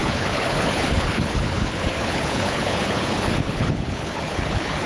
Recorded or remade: remade